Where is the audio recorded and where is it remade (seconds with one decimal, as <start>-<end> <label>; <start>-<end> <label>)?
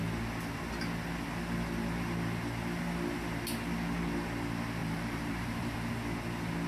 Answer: 0.0-4.8 recorded; 4.8-5.9 remade; 5.9-6.7 recorded